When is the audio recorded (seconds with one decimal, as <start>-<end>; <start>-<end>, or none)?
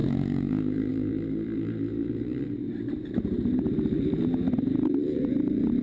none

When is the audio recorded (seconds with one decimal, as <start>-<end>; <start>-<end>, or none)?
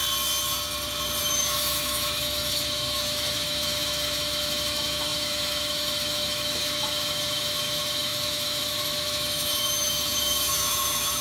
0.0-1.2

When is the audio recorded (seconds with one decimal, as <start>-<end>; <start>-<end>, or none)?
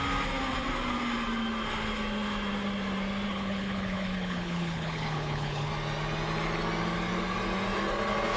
0.0-3.3; 5.7-8.4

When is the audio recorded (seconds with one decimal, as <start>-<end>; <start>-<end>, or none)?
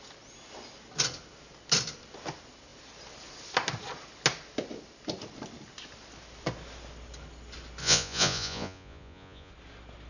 0.0-7.8; 9.5-10.1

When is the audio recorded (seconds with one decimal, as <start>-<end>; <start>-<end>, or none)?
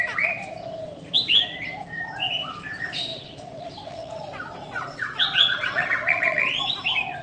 0.0-3.1; 6.6-7.2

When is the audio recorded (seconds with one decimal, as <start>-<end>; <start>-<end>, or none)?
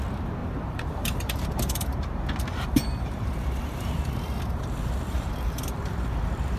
0.0-0.4; 2.3-2.7